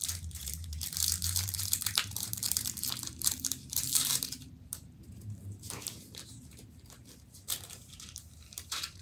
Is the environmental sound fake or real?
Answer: fake